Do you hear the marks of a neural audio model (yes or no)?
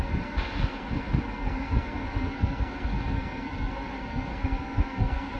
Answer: yes